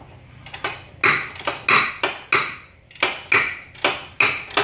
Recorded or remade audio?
recorded